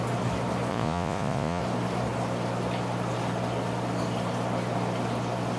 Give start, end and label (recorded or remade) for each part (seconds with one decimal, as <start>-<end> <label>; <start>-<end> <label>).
0.0-0.7 recorded; 0.7-1.6 remade; 1.6-5.6 recorded